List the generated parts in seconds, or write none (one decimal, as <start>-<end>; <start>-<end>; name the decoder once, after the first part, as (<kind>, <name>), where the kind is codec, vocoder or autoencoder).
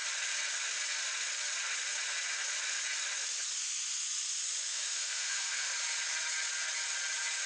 4.7-5.7 (autoencoder, DAC-VAE)